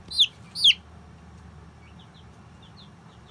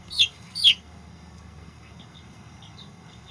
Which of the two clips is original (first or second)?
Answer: first